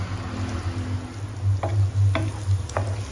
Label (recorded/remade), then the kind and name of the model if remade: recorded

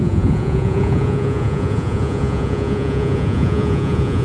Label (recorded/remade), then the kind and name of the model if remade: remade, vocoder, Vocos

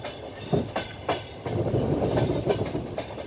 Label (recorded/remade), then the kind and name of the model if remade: recorded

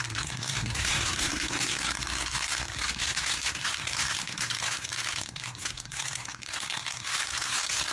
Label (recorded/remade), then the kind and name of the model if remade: remade, codec, SNAC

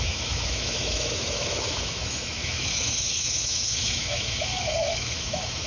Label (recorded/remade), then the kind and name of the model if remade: remade, autoencoder, DAC-VAE